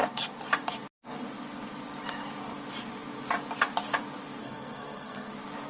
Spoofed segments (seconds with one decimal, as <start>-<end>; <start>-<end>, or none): 4.4-5.3